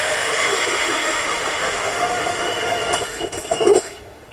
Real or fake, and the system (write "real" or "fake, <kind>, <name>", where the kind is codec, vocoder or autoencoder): fake, autoencoder, DAC-VAE